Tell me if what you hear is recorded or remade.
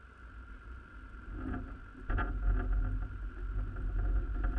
recorded